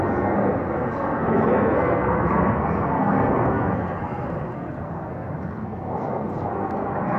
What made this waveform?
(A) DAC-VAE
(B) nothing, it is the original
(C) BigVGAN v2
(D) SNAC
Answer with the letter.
D